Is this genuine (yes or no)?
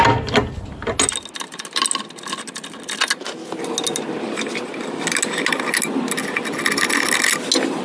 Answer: yes